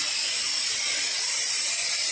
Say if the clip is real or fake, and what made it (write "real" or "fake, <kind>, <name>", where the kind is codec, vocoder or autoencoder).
real